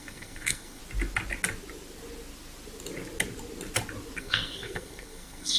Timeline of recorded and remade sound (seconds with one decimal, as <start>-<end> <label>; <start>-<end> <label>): 0.0-0.8 remade; 0.8-4.2 recorded; 4.2-5.6 remade